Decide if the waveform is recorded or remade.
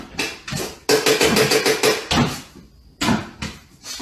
recorded